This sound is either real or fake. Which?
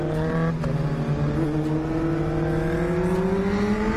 real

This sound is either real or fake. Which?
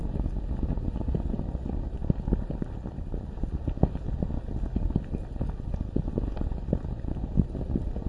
real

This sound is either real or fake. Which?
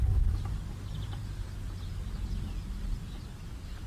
real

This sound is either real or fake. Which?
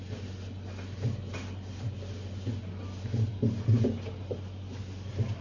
real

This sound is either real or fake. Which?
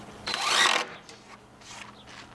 real